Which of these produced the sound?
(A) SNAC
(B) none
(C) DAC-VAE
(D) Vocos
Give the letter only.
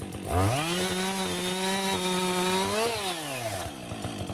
B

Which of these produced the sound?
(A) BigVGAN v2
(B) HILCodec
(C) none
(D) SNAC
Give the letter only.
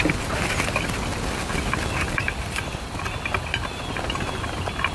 C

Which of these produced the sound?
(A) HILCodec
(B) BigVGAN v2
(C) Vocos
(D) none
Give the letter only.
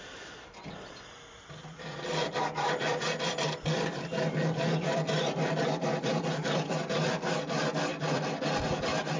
B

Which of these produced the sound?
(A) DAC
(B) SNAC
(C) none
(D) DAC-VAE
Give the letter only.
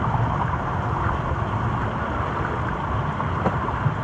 C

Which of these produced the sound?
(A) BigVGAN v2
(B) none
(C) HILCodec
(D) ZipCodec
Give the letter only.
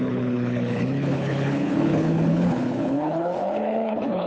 C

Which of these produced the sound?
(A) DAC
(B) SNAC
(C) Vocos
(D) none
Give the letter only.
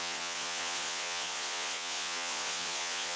C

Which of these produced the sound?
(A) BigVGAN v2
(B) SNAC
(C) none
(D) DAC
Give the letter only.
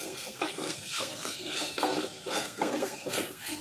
B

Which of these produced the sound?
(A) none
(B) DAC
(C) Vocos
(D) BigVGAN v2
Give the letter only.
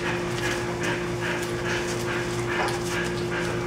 A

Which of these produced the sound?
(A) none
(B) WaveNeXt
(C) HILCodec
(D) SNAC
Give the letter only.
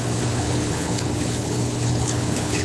C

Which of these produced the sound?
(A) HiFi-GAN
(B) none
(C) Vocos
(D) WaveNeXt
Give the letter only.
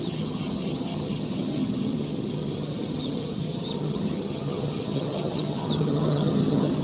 A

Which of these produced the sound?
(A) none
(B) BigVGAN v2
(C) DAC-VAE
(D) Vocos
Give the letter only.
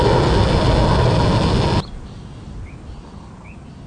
A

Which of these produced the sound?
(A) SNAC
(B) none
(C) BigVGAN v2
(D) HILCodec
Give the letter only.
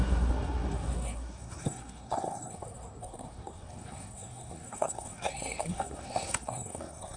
A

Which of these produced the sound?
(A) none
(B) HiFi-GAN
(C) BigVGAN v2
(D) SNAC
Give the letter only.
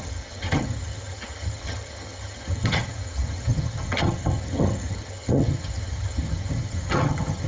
B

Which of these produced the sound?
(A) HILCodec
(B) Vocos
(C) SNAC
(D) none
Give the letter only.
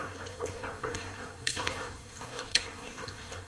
C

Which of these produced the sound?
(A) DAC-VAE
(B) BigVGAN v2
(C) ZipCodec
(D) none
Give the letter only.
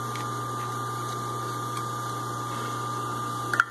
D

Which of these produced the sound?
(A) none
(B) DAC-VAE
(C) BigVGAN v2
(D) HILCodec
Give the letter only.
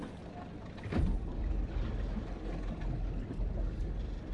A